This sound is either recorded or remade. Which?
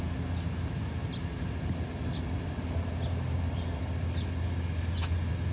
recorded